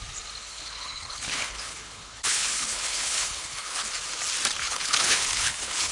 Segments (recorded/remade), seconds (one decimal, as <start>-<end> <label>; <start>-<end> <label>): 0.0-0.4 recorded; 0.4-3.9 remade; 3.9-4.6 recorded; 4.6-5.9 remade